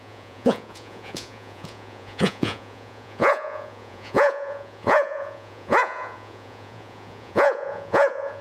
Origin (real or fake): fake